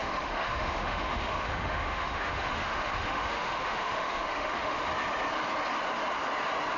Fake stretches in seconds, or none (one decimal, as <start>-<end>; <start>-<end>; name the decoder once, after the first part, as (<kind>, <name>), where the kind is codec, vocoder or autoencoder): 0.0-4.9 (autoencoder, DAC-VAE)